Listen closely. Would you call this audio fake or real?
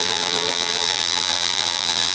fake